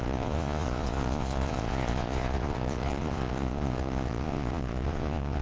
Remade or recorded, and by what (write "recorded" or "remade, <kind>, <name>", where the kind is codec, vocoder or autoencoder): remade, vocoder, Vocos